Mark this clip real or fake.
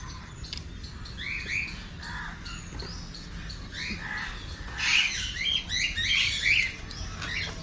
real